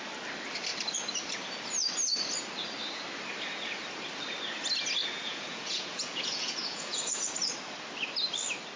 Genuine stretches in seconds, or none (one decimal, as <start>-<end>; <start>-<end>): 0.0-5.0; 7.2-8.8